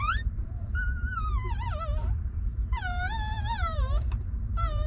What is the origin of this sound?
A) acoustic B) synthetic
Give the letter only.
B